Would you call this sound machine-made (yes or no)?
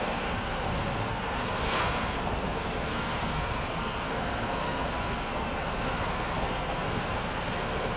yes